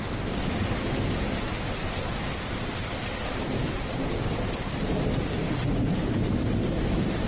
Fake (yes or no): no